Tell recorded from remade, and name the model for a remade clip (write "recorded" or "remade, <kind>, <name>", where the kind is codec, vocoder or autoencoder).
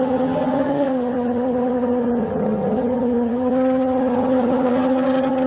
remade, vocoder, HiFi-GAN